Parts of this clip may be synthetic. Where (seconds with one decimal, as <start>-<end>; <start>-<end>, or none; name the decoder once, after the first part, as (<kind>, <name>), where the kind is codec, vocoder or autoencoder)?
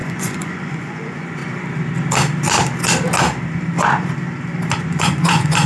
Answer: 0.0-1.4 (vocoder, Vocos); 4.8-5.7